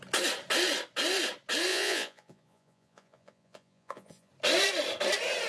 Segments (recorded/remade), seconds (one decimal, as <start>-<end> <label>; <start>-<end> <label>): 0.0-1.7 recorded; 1.7-4.3 remade; 4.3-5.5 recorded